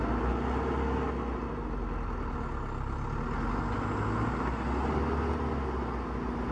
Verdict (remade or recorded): recorded